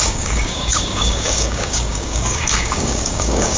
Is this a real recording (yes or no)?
no